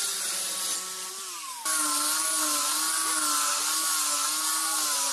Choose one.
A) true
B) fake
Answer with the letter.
A